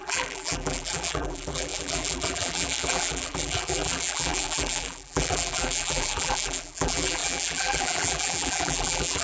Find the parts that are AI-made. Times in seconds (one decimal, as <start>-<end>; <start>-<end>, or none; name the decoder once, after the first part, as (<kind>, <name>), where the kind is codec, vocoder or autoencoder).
0.0-9.2 (vocoder, BigVGAN v2)